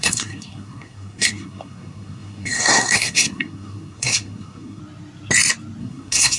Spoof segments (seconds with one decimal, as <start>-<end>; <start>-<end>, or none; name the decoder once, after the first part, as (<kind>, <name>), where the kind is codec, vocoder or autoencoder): 0.0-4.8 (codec, SNAC); 5.8-6.4